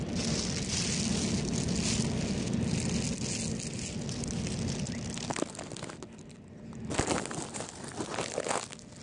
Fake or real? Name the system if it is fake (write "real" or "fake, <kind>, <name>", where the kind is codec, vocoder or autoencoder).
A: real